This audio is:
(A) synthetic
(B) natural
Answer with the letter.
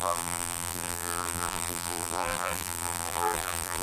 A